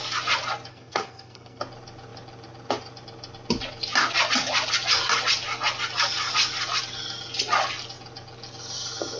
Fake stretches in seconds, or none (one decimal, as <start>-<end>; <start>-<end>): 0.7-1.6